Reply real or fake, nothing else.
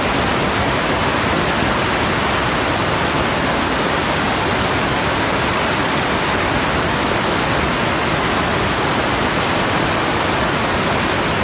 real